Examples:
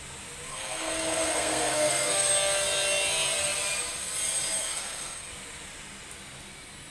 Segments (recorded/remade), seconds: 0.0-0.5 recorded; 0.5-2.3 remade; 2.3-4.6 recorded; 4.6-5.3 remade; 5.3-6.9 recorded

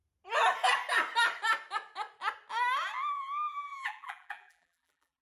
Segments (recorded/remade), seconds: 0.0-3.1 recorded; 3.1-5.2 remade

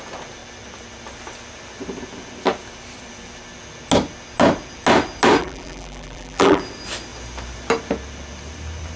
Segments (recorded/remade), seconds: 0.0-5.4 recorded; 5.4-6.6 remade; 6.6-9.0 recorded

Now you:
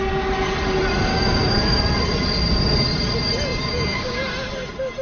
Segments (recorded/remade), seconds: 0.0-1.1 recorded; 1.1-1.8 remade; 1.8-3.5 recorded; 3.5-4.2 remade; 4.2-5.0 recorded

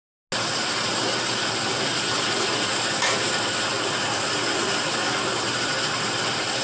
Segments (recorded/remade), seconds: 0.0-6.6 recorded

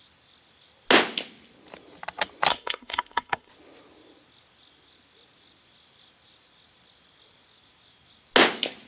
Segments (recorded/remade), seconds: 0.0-2.5 recorded; 2.5-3.5 remade; 3.5-8.9 recorded

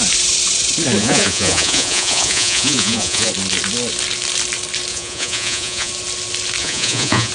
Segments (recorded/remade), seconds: 0.0-1.0 recorded; 1.0-3.3 remade; 3.3-4.9 recorded; 4.9-5.9 remade; 5.9-6.6 recorded; 6.6-7.3 remade

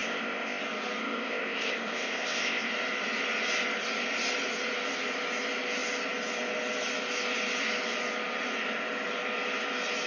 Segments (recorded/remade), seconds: 0.0-0.6 remade; 0.6-1.0 recorded; 1.0-2.7 remade; 2.7-10.1 recorded